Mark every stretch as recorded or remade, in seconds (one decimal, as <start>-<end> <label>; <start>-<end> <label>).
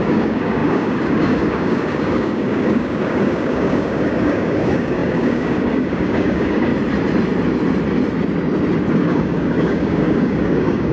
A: 0.0-6.7 remade; 6.7-8.9 recorded; 8.9-10.9 remade